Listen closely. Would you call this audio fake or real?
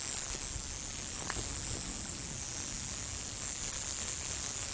real